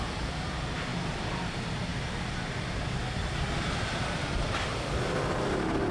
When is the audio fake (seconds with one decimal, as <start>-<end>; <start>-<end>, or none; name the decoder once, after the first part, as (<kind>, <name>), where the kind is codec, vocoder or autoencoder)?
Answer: none